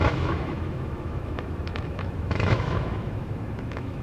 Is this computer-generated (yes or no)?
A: yes